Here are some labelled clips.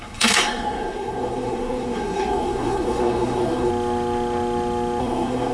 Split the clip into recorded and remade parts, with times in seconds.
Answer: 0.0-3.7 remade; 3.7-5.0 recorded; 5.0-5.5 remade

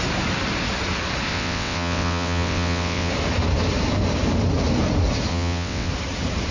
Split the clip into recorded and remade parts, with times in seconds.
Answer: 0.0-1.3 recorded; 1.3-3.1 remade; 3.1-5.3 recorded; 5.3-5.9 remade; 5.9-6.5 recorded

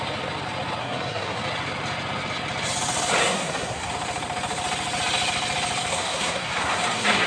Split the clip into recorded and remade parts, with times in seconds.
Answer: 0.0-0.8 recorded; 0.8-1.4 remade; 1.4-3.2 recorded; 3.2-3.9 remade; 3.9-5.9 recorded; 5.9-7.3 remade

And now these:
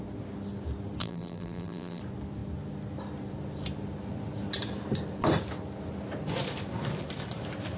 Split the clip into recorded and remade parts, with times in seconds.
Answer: 0.0-1.0 recorded; 1.0-2.0 remade; 2.0-7.8 recorded

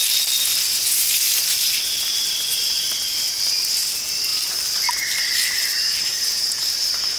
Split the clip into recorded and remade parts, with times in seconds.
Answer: 0.0-6.1 recorded; 6.1-6.6 remade; 6.6-7.2 recorded